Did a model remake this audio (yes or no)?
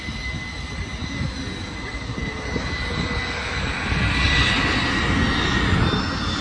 no